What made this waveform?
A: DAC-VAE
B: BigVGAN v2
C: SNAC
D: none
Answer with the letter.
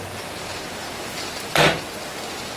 B